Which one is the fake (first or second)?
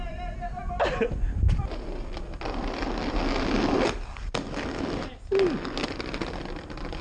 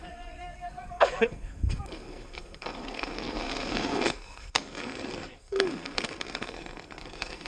second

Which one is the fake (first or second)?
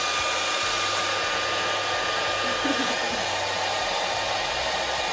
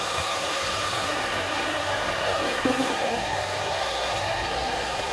second